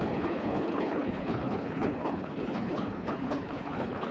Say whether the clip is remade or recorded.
remade